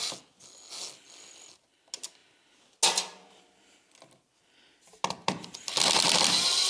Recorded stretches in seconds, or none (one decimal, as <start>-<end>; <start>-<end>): 0.0-6.7